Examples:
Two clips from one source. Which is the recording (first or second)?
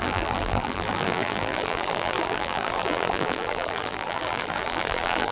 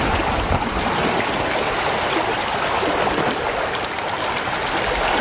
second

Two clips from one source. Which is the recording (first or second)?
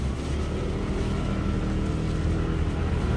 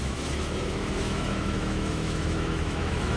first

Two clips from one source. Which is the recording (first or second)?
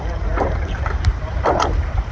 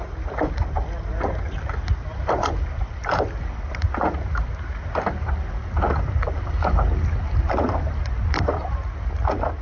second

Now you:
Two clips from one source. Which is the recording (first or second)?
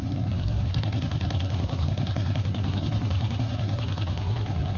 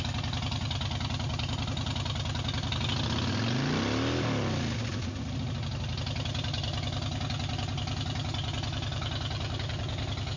second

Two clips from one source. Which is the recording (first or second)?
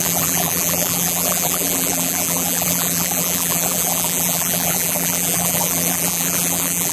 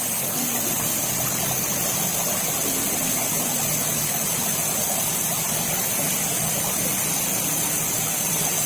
second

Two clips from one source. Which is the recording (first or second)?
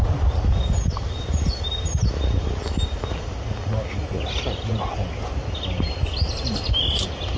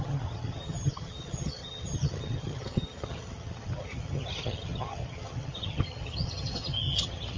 first